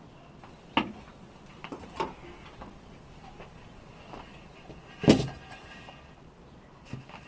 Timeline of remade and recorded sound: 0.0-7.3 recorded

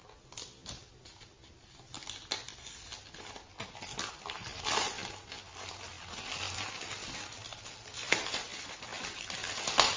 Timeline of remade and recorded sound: 0.0-10.0 recorded

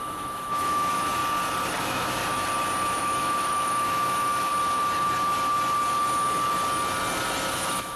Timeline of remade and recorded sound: 0.0-1.2 remade; 1.2-1.8 recorded; 1.8-2.2 remade; 2.2-3.0 recorded; 3.0-4.5 remade; 4.5-7.5 recorded; 7.5-8.0 remade

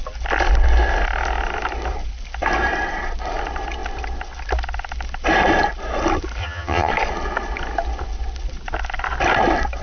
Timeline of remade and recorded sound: 0.0-6.4 recorded; 6.4-6.9 remade; 6.9-9.8 recorded

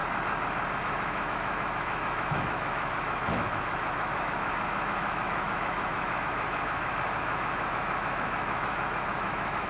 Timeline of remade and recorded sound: 0.0-0.8 recorded; 0.8-9.7 remade

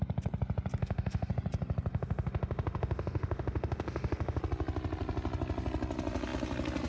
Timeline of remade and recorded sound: 0.0-0.8 recorded; 0.8-1.3 remade; 1.3-1.9 recorded; 1.9-4.4 remade; 4.4-6.9 recorded